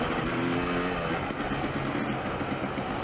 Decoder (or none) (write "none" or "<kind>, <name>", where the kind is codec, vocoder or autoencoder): none